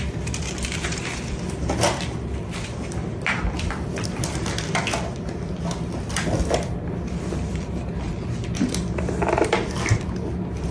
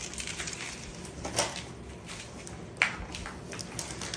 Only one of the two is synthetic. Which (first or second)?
first